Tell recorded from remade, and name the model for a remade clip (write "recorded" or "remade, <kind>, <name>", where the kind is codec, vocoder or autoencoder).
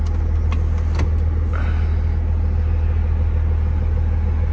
recorded